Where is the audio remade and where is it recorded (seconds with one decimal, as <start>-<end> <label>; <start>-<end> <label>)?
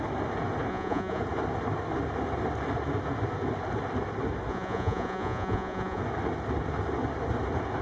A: 0.0-0.7 recorded; 0.7-1.2 remade; 1.2-4.5 recorded; 4.5-6.0 remade; 6.0-7.8 recorded